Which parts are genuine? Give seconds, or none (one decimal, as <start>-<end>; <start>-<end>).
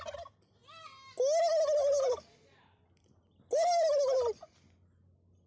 0.0-5.5